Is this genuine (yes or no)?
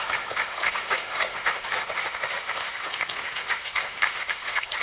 no